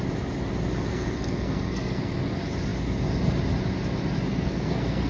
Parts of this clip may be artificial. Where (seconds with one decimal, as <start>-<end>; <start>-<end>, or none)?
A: 0.9-2.2; 4.3-5.1